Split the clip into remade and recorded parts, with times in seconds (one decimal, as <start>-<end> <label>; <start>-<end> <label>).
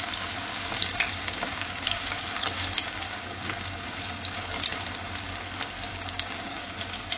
0.0-0.5 recorded; 0.5-4.8 remade; 4.8-5.9 recorded; 5.9-6.6 remade; 6.6-7.2 recorded